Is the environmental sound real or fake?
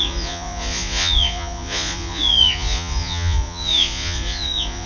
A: fake